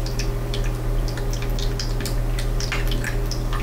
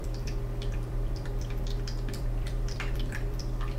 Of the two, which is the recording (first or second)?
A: first